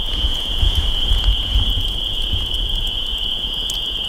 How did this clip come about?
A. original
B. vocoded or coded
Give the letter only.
B